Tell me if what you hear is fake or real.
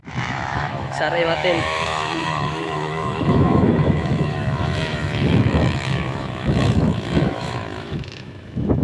fake